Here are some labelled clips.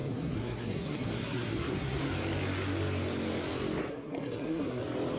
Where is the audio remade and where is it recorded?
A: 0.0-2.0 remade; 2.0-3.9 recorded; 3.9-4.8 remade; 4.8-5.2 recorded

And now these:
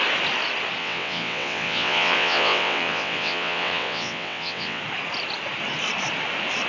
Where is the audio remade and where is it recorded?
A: 0.0-0.8 recorded; 0.8-4.8 remade; 4.8-6.7 recorded

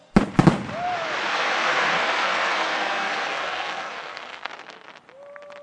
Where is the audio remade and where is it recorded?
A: 0.0-1.3 recorded; 1.3-4.5 remade; 4.5-5.6 recorded

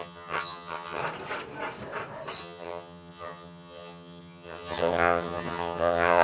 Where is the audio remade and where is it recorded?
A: 0.0-1.0 remade; 1.0-2.4 recorded; 2.4-6.2 remade

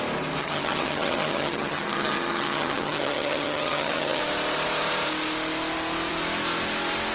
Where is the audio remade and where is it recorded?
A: 0.0-0.4 recorded; 0.4-4.2 remade; 4.2-7.1 recorded

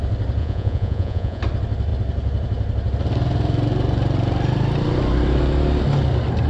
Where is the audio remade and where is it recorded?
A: 0.0-0.4 recorded; 0.4-1.4 remade; 1.4-6.5 recorded